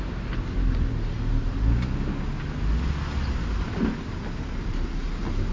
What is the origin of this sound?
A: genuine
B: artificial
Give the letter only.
A